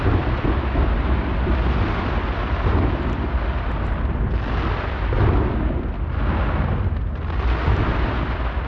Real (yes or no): yes